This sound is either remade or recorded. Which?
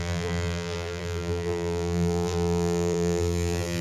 remade